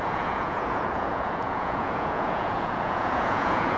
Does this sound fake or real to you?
fake